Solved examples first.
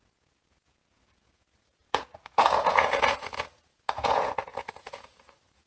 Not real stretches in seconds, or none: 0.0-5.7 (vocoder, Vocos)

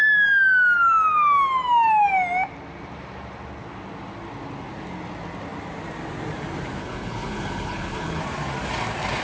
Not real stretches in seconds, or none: 6.8-8.2 (codec, HILCodec)

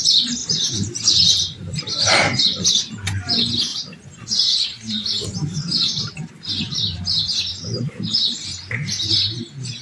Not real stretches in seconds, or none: 0.4-2.4 (vocoder, BigVGAN v2); 3.7-6.3; 7.5-8.0